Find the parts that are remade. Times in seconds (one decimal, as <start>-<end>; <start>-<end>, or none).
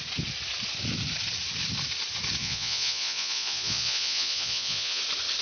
2.4-5.0